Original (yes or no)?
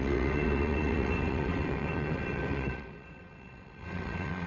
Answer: no